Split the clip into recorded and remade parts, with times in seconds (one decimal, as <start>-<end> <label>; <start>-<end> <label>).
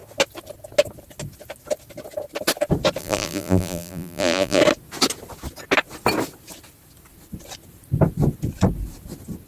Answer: 0.0-3.0 recorded; 3.0-4.6 remade; 4.6-9.5 recorded